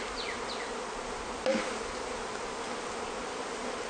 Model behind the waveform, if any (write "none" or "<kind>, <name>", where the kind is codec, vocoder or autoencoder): none